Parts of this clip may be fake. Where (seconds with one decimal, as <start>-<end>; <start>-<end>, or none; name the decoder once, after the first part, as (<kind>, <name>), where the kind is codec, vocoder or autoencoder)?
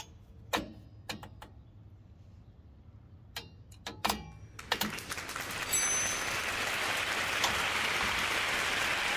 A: none